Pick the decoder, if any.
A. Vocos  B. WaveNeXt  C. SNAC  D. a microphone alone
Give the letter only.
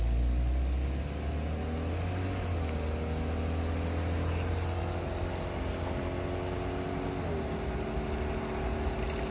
D